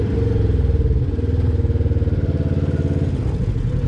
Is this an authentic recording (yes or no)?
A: yes